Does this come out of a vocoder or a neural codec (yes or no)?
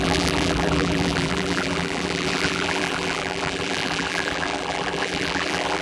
yes